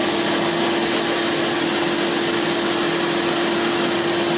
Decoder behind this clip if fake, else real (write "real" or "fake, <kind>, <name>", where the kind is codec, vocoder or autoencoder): real